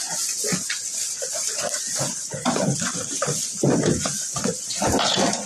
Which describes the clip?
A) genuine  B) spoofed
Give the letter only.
A